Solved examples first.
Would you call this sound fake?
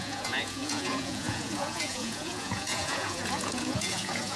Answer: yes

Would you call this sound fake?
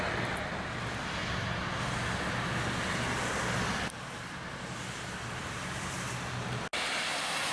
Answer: no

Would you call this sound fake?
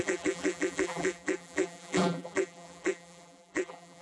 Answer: yes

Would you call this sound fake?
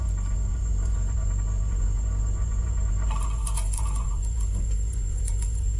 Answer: yes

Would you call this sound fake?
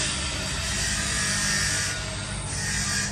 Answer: no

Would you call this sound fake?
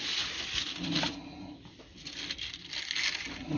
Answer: no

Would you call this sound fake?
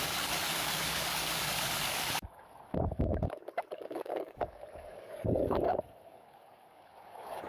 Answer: yes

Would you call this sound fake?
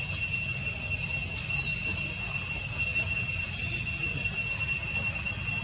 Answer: no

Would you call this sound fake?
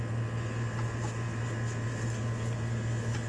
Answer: no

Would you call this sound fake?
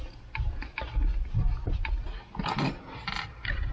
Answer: no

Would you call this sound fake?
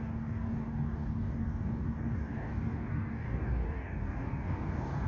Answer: yes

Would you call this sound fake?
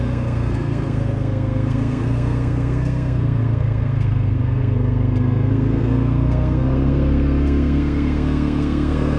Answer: yes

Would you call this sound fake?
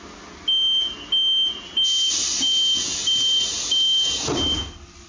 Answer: no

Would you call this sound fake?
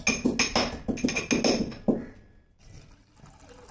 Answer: no